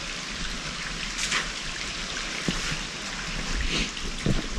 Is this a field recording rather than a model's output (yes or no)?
yes